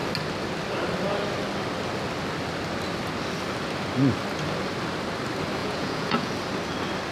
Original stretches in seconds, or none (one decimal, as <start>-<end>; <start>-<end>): 0.0-5.6; 6.3-7.1